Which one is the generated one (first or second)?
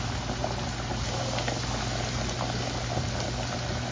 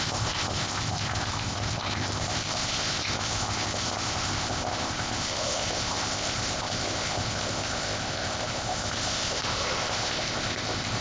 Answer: second